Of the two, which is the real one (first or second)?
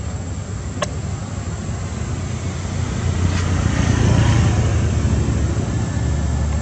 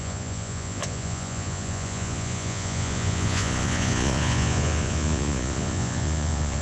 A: first